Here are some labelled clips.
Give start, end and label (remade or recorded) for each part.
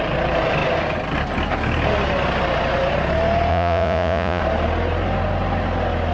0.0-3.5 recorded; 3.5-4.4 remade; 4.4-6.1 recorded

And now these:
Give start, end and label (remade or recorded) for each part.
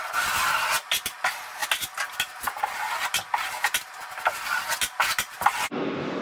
0.0-6.2 recorded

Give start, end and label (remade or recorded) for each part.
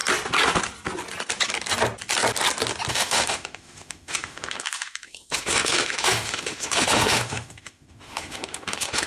0.0-2.9 recorded; 2.9-9.1 remade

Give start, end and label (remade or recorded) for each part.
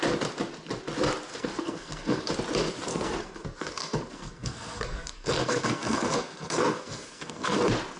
0.0-1.3 recorded; 1.3-2.3 remade; 2.3-2.9 recorded; 2.9-7.6 remade; 7.6-8.0 recorded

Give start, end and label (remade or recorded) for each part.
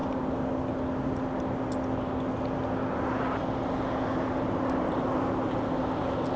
0.0-6.4 recorded